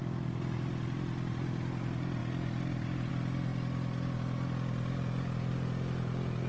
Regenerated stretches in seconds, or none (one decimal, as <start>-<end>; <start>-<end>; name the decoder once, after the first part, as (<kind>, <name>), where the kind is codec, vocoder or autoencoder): none